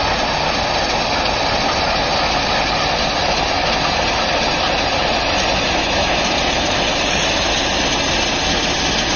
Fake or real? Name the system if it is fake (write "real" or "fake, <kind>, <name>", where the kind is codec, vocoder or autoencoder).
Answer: real